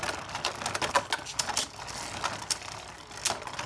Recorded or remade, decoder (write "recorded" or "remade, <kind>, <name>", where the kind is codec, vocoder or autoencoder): recorded